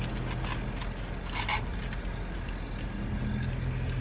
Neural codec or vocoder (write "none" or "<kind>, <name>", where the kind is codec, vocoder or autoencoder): none